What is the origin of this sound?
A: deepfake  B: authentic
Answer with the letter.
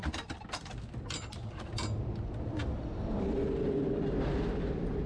B